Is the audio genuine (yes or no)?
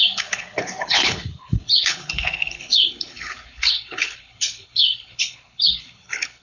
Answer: no